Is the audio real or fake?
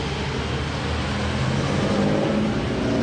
real